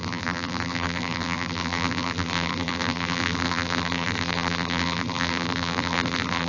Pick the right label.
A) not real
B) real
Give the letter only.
A